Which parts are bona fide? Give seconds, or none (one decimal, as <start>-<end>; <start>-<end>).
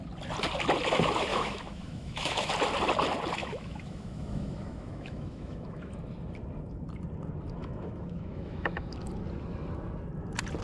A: 0.0-1.3; 2.5-3.4; 5.9-7.6; 9.1-10.6